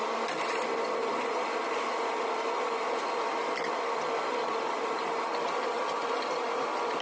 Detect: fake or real real